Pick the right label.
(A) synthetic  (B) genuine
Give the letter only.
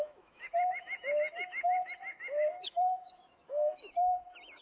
A